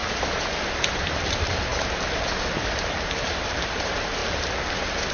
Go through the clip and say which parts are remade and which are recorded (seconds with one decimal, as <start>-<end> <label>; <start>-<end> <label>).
0.0-0.7 recorded; 0.7-1.7 remade; 1.7-3.0 recorded; 3.0-4.2 remade; 4.2-5.1 recorded